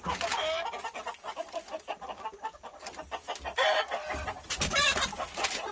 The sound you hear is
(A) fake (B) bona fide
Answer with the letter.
B